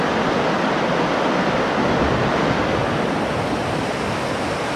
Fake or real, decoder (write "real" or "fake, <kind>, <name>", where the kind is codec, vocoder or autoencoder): real